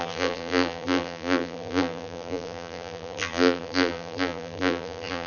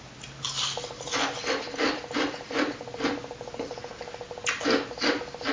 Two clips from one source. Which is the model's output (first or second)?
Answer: first